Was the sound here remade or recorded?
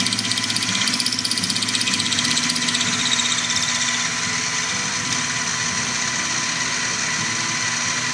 recorded